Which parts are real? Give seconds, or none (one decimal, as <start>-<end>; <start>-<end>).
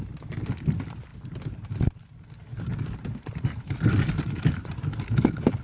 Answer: 0.0-2.5; 4.4-5.6